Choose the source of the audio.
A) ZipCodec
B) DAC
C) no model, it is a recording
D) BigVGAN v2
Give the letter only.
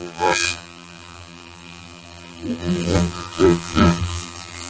D